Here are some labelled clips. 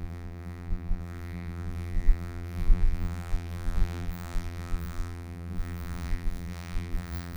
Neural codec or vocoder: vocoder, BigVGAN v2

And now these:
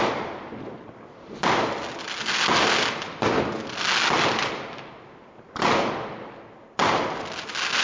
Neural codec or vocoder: none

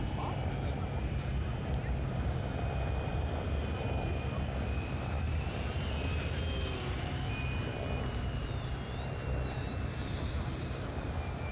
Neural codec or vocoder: vocoder, BigVGAN v2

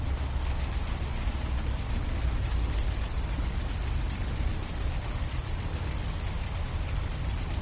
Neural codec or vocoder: none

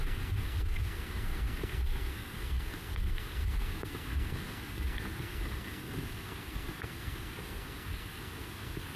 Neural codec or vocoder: codec, SNAC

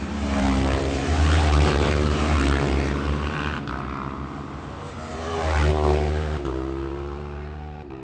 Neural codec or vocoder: vocoder, BigVGAN v2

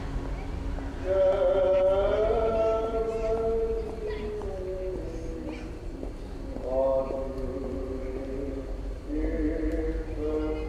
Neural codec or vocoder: none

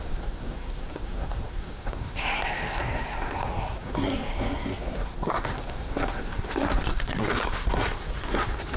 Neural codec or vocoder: codec, SNAC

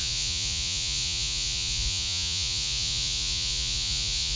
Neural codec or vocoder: vocoder, Vocos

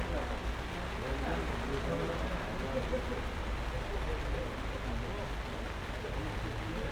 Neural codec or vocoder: none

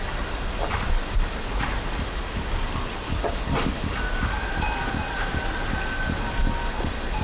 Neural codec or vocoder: none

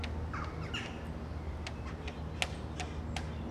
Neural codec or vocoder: none